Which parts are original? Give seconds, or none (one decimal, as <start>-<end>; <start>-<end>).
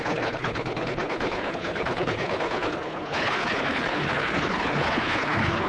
none